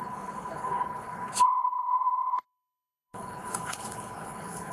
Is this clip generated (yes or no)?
yes